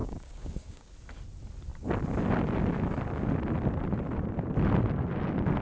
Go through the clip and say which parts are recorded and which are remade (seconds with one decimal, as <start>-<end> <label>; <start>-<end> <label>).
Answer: 0.0-0.9 remade; 0.9-5.6 recorded